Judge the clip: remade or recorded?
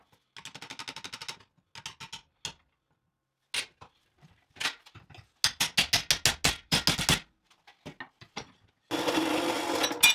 recorded